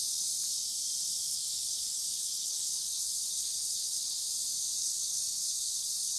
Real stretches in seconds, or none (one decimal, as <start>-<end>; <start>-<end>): 0.0-1.3; 4.3-4.8